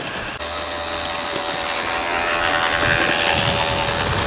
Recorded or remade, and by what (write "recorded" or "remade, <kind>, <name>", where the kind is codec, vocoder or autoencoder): recorded